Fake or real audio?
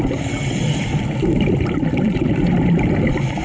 real